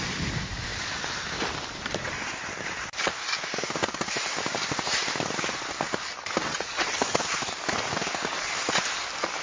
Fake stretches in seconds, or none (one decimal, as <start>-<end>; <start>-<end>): 6.4-7.2